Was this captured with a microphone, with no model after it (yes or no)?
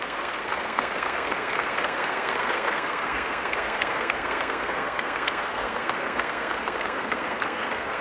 no